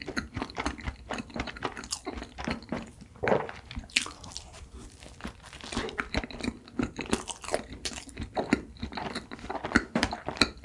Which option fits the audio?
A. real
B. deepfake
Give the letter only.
B